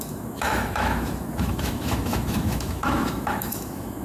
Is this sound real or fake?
fake